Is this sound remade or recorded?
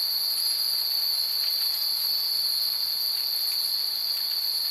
recorded